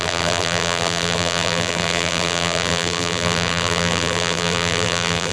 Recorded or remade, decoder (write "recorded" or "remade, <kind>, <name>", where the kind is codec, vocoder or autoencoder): remade, vocoder, BigVGAN v2